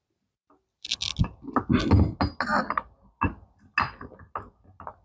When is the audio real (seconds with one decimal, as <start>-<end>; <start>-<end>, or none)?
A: 0.0-5.0